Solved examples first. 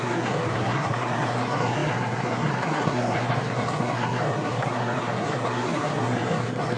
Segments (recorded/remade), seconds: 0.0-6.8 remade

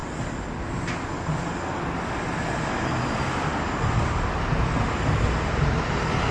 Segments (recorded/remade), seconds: 0.0-6.3 recorded

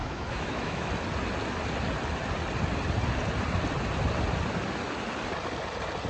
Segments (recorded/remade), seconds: 0.0-0.9 remade; 0.9-6.1 recorded

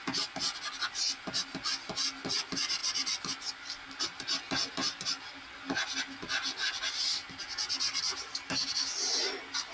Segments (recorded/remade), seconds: 0.0-9.7 recorded